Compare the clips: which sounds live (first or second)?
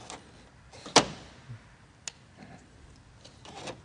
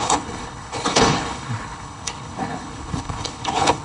first